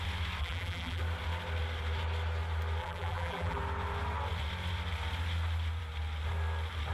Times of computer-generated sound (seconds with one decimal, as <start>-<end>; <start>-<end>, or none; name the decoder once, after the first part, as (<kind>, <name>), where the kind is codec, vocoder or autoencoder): 0.4-1.0 (vocoder, BigVGAN v2); 2.8-3.6